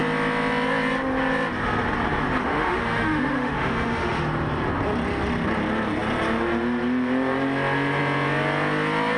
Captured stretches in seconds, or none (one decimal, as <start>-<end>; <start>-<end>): 0.0-2.4; 4.2-9.2